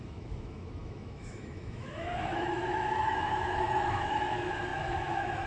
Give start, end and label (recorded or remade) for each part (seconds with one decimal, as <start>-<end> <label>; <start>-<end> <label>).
0.0-5.5 remade